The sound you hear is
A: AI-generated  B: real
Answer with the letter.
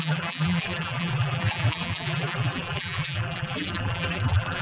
A